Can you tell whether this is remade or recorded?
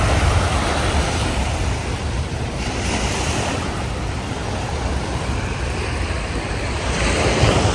remade